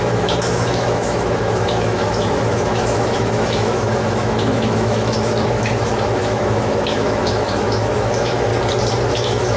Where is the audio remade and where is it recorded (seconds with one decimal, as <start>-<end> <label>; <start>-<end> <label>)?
0.0-8.5 remade; 8.5-9.1 recorded; 9.1-9.6 remade